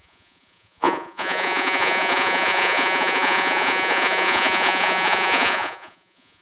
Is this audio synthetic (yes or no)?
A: yes